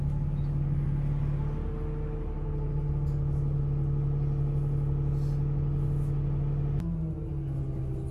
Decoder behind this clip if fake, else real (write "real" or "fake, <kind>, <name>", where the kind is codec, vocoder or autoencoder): real